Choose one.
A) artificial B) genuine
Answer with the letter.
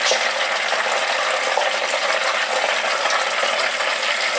B